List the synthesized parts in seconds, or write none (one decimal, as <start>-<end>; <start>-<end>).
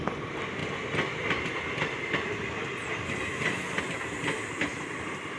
none